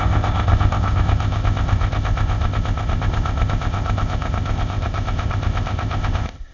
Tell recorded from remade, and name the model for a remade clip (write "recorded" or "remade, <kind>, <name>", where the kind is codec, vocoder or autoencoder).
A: remade, codec, ZipCodec